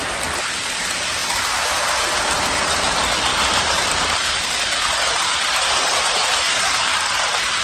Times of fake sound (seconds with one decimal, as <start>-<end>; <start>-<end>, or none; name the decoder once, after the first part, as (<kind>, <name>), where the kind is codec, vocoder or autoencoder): 3.3-6.9 (vocoder, BigVGAN v2)